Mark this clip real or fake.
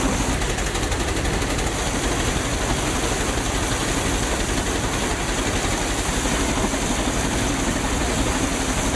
real